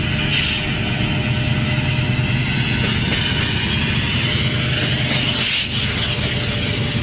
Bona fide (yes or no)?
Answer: yes